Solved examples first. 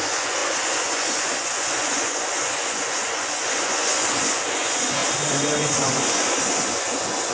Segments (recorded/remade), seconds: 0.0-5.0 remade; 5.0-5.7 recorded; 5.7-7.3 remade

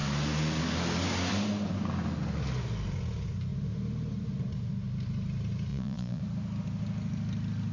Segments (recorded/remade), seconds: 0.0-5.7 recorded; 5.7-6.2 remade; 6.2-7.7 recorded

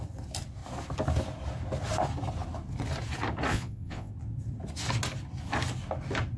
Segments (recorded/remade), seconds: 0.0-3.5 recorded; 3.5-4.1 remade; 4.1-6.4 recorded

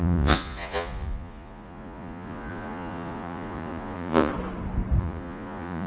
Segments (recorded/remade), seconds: 0.0-4.3 remade; 4.3-5.0 recorded; 5.0-5.9 remade

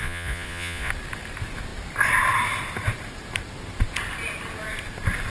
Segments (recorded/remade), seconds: 0.0-0.9 remade; 0.9-5.3 recorded

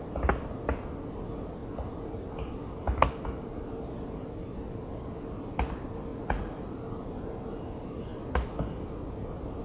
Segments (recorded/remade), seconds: 0.0-6.1 recorded; 6.1-6.6 remade; 6.6-9.6 recorded

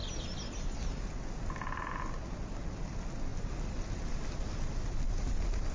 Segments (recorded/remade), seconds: 0.0-5.7 recorded